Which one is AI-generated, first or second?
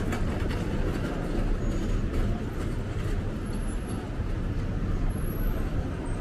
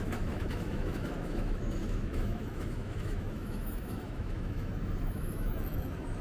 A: second